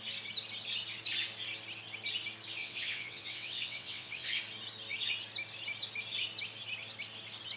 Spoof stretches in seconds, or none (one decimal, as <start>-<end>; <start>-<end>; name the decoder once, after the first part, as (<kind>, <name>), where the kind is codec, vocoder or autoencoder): 2.6-4.4 (vocoder, WaveNeXt)